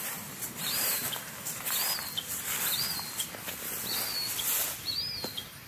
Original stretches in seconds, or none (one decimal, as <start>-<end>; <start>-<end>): 1.0-4.4

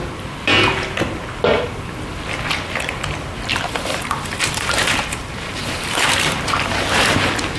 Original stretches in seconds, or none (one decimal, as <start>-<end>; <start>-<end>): 0.0-3.5